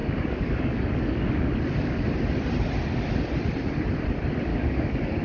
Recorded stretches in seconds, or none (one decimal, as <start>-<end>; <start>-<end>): 1.5-4.5